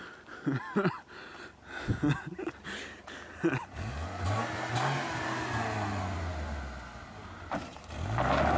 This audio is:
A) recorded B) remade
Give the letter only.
A